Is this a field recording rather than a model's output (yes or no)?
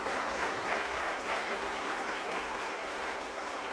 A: no